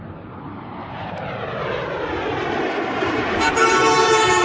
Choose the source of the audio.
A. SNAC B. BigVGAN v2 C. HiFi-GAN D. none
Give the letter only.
B